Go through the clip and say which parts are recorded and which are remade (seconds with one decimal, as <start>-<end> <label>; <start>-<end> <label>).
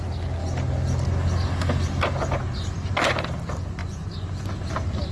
0.0-3.8 recorded; 3.8-4.5 remade; 4.5-5.1 recorded